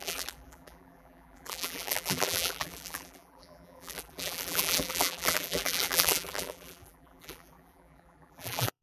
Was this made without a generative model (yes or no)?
no